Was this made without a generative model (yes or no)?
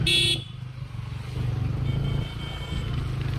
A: yes